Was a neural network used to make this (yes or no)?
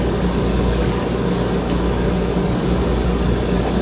yes